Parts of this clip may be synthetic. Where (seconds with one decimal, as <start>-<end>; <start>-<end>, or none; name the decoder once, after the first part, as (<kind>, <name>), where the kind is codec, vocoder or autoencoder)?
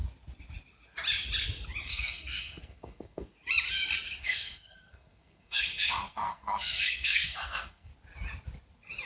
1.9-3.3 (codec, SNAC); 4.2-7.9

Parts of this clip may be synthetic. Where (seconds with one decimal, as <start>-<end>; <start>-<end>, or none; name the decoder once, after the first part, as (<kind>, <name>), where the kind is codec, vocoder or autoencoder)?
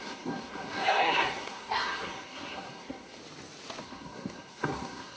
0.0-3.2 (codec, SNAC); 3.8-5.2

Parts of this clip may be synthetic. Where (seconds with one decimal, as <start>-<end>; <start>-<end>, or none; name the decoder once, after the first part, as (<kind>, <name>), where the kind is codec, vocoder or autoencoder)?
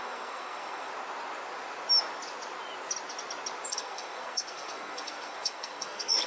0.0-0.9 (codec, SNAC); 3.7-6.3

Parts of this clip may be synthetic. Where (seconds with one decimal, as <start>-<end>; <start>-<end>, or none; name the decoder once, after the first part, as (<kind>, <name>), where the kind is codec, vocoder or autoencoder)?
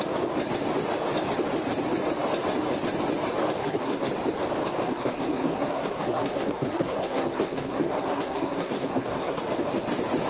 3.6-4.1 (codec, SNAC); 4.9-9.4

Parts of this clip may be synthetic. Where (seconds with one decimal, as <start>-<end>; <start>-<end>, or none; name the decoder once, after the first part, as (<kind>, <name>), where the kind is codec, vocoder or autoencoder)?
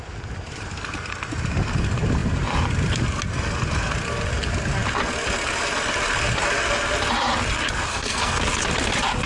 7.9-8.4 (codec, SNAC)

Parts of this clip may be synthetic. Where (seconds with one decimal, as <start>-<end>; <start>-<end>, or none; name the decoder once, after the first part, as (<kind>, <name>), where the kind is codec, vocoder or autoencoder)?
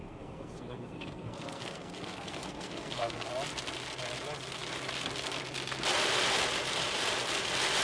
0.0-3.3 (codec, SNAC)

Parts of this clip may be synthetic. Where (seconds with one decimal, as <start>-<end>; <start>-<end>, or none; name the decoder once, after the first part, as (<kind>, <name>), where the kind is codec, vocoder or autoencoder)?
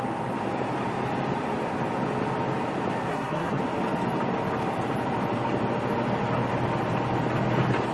3.1-3.6 (codec, SNAC)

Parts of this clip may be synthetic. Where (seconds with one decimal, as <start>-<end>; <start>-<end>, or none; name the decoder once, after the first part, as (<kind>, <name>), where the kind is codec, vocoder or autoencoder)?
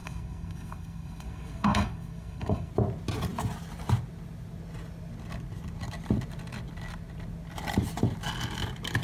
0.0-2.7 (codec, SNAC)